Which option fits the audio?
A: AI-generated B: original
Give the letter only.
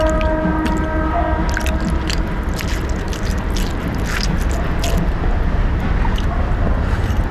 B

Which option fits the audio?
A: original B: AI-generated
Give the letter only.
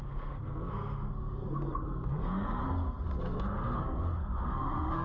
B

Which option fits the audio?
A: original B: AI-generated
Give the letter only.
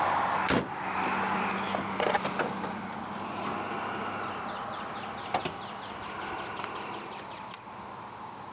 A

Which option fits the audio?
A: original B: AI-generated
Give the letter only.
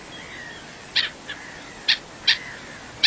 A